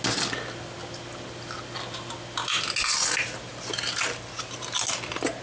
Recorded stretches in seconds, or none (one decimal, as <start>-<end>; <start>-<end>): 0.0-5.4